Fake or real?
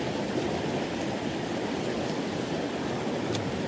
real